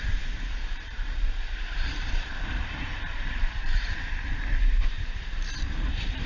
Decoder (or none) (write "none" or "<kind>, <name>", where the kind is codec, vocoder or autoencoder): vocoder, BigVGAN v2